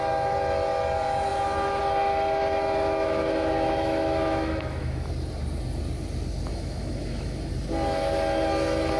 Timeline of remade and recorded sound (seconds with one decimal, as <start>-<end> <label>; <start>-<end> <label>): 0.0-1.3 recorded; 1.3-1.8 remade; 1.8-2.4 recorded; 2.4-5.1 remade; 5.1-6.5 recorded; 6.5-7.5 remade; 7.5-9.0 recorded